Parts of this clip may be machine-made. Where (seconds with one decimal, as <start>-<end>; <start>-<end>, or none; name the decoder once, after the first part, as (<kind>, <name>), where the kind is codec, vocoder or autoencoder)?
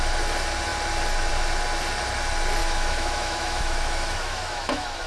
2.6-5.1 (autoencoder, DAC-VAE)